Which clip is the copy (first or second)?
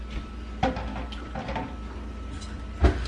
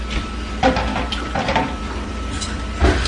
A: second